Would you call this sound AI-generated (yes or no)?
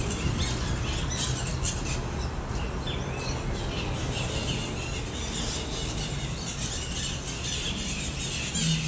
no